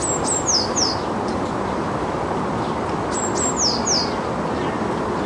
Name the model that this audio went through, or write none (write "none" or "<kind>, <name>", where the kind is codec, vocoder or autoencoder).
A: none